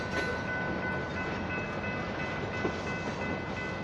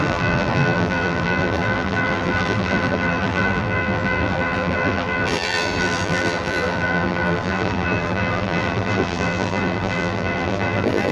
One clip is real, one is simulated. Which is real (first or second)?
first